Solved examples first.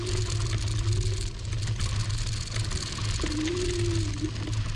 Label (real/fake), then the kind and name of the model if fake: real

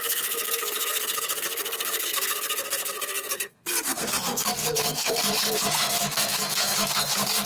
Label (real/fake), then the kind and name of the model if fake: fake, codec, SNAC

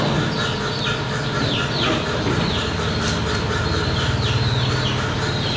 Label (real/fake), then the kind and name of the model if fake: real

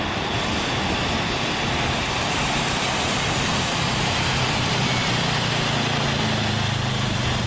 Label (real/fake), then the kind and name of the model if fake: real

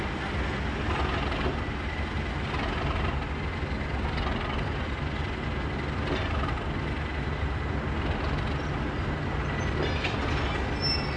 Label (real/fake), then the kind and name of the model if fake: real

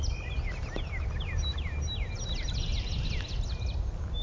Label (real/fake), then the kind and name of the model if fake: real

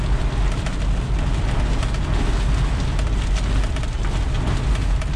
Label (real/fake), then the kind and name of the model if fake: real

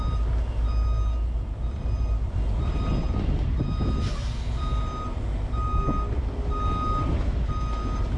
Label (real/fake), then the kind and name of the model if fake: real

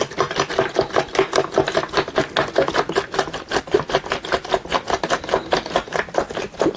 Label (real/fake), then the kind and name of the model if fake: real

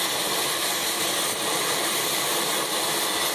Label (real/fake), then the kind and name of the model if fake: real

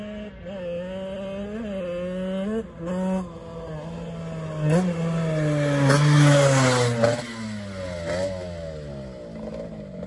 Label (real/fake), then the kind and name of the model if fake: real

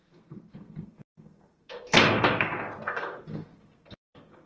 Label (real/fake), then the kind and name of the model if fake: fake, codec, SNAC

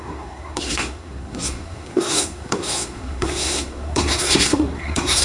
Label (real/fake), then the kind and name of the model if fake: fake, codec, SNAC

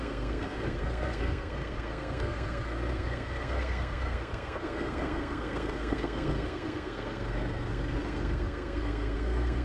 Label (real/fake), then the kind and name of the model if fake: fake, codec, SNAC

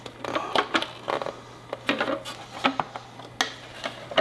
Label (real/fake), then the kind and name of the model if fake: real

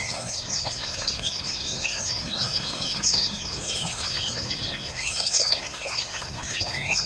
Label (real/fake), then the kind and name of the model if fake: fake, codec, SNAC